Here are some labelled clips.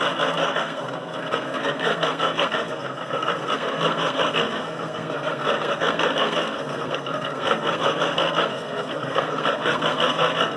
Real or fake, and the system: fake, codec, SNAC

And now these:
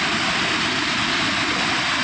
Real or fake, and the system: real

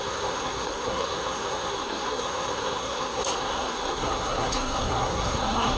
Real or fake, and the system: fake, codec, SNAC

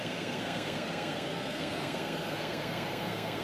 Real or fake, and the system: fake, codec, SNAC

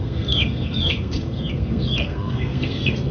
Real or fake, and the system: fake, codec, SNAC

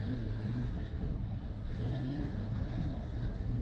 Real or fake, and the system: fake, codec, SNAC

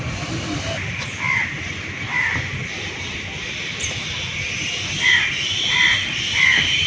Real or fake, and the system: real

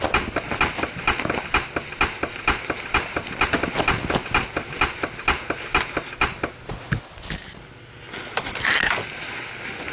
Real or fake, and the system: real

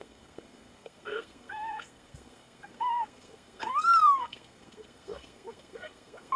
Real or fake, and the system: fake, codec, SNAC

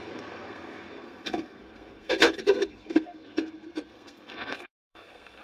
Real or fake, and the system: fake, codec, SNAC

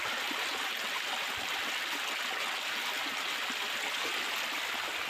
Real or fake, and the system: real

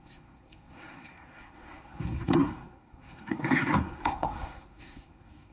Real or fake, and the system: fake, codec, SNAC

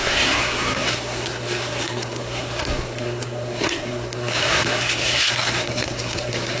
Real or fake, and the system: fake, codec, SNAC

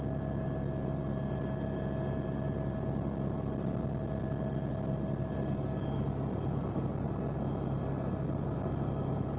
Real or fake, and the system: real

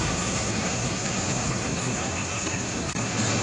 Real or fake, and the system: fake, codec, SNAC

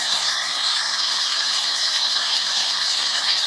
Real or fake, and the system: fake, codec, SNAC